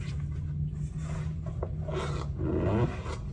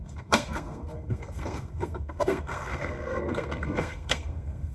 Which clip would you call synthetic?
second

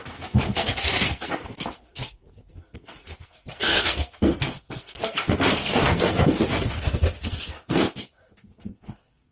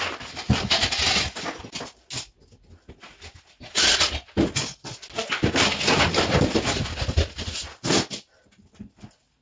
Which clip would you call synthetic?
first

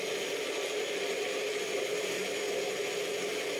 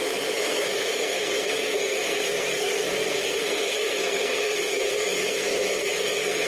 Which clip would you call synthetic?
second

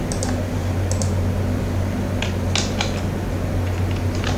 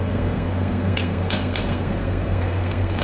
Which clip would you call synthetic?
second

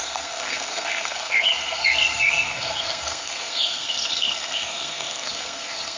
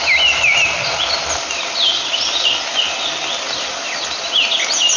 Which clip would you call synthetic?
first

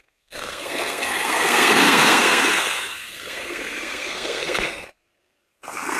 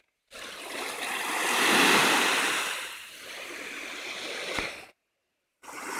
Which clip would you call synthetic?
first